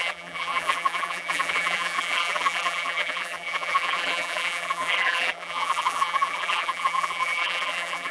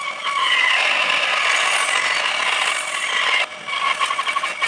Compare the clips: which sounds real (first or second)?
second